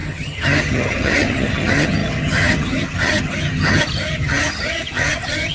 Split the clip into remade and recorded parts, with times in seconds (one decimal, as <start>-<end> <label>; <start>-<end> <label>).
0.0-5.5 remade